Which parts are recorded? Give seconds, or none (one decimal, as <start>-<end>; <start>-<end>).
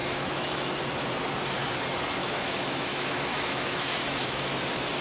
0.7-2.2; 4.6-5.0